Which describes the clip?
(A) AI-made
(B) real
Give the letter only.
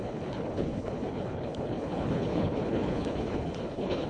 A